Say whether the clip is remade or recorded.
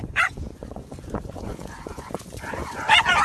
remade